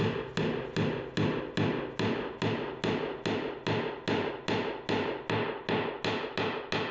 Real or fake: real